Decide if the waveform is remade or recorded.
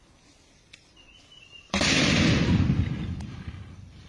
remade